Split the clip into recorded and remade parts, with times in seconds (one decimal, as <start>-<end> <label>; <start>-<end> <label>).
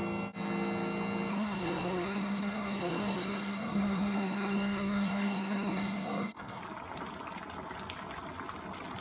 0.0-1.3 recorded; 1.3-6.6 remade; 6.6-9.0 recorded